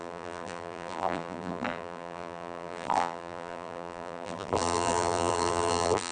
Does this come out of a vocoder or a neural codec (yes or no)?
yes